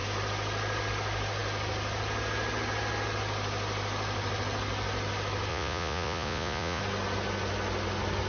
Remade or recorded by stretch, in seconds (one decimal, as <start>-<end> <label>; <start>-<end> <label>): 0.0-5.5 recorded; 5.5-6.8 remade; 6.8-8.3 recorded

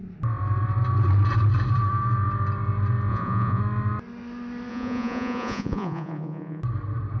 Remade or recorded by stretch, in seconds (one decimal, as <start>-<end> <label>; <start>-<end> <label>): 0.0-3.1 recorded; 3.1-3.6 remade; 3.6-4.7 recorded; 4.7-6.6 remade; 6.6-7.2 recorded